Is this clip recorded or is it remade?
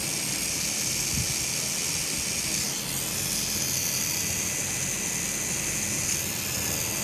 recorded